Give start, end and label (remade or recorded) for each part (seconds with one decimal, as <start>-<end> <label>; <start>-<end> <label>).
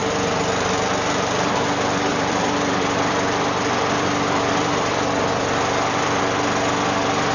0.0-0.9 remade; 0.9-2.1 recorded; 2.1-6.2 remade; 6.2-7.3 recorded